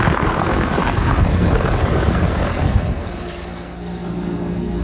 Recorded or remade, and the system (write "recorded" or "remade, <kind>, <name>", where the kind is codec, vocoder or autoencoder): remade, codec, SNAC